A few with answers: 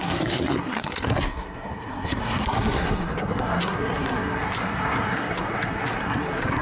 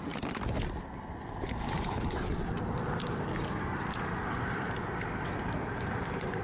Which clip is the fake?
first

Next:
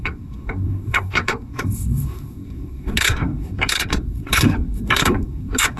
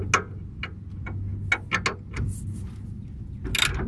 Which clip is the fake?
first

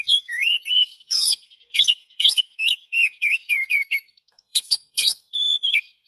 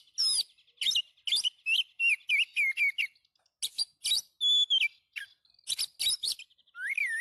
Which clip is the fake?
first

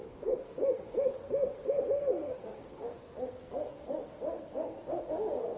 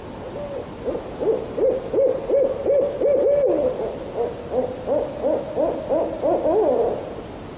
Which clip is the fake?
first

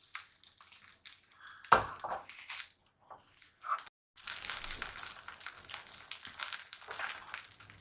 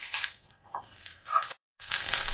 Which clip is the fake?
second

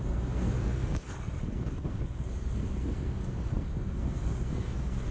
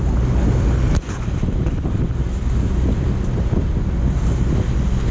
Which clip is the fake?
first